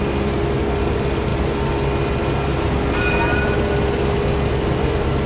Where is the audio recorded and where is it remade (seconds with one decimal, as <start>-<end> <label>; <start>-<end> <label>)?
0.0-5.3 recorded